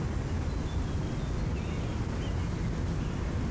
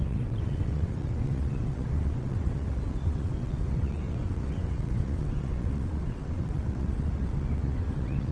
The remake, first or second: second